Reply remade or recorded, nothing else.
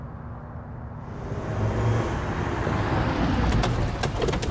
recorded